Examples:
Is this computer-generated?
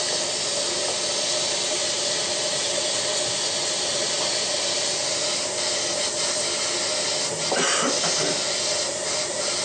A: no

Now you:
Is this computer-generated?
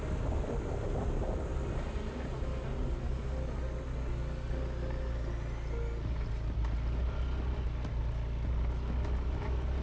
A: no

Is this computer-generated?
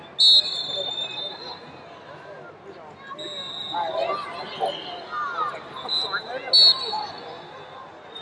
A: no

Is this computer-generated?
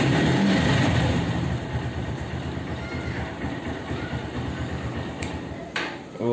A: yes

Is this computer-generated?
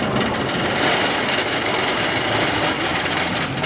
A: yes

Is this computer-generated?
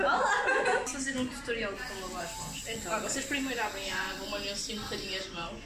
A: no